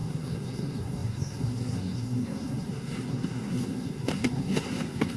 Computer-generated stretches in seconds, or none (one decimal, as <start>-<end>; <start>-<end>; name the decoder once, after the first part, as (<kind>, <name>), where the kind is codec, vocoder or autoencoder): 0.0-5.2 (codec, SNAC)